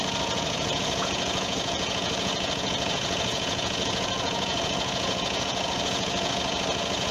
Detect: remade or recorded remade